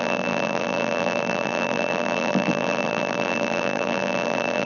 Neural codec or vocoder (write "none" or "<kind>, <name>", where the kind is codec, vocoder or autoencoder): vocoder, BigVGAN v2